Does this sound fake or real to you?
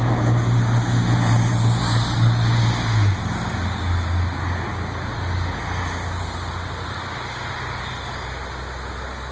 real